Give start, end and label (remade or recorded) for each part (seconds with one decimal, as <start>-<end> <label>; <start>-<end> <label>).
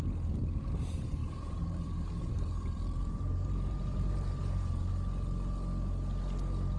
0.0-1.2 recorded; 1.2-4.9 remade; 4.9-6.8 recorded